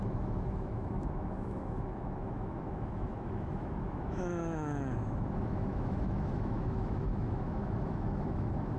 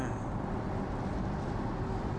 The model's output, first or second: first